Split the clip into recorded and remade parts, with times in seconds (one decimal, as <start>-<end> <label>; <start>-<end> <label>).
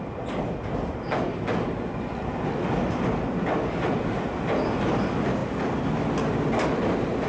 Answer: 0.0-7.3 recorded